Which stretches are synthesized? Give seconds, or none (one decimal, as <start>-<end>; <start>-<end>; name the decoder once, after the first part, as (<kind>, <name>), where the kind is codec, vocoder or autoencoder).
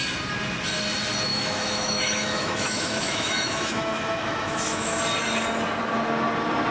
1.3-5.0 (autoencoder, DAC-VAE)